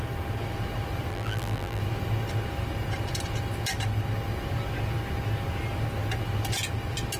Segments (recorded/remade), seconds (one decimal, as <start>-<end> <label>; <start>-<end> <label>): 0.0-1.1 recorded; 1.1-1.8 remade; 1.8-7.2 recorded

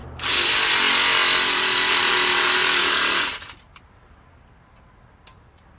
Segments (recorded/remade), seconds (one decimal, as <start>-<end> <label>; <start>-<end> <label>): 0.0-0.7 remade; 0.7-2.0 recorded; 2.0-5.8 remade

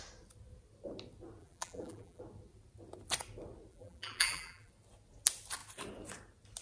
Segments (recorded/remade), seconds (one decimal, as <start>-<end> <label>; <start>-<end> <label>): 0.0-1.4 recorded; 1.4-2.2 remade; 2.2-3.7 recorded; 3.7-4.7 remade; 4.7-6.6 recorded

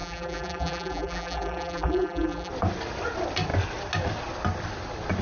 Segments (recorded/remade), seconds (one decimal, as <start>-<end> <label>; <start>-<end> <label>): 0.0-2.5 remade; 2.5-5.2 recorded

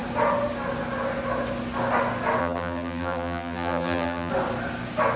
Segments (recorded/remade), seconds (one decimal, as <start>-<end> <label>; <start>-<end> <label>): 0.0-2.4 recorded; 2.4-4.3 remade; 4.3-5.2 recorded

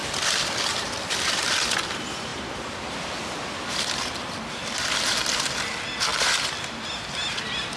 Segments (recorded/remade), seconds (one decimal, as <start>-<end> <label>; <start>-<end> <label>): 0.0-1.3 remade; 1.3-2.3 recorded; 2.3-5.0 remade; 5.0-6.1 recorded; 6.1-7.0 remade; 7.0-7.8 recorded